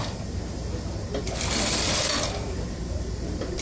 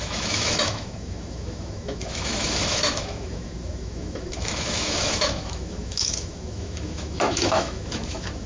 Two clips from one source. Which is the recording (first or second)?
first